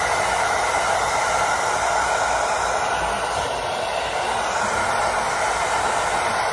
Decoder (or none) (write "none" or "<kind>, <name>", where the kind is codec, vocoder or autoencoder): none